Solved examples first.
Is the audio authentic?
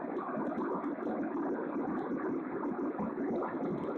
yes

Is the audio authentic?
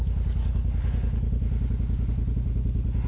yes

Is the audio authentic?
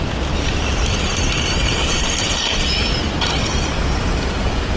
yes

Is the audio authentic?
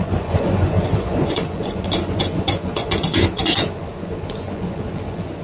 no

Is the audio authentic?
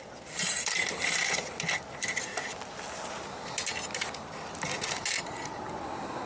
yes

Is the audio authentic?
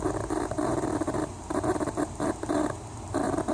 no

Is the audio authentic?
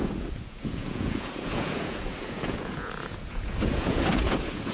no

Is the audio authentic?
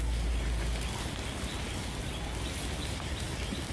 yes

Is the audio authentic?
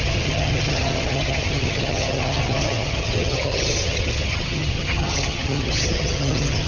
no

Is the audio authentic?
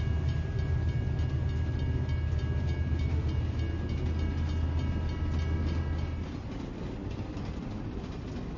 yes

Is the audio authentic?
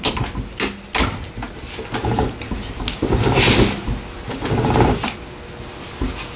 yes